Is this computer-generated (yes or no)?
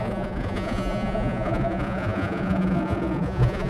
yes